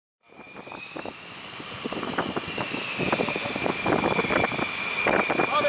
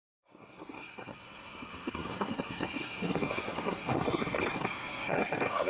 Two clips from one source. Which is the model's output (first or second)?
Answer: second